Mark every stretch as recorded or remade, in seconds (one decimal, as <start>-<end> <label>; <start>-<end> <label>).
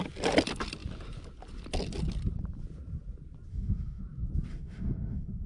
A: 0.0-3.5 recorded; 3.5-4.0 remade; 4.0-4.5 recorded; 4.5-5.5 remade